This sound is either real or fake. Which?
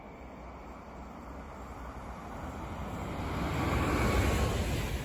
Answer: real